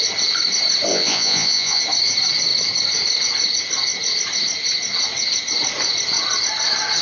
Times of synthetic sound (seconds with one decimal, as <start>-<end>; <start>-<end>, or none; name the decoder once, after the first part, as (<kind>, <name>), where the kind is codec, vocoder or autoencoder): 0.9-1.8 (vocoder, Vocos)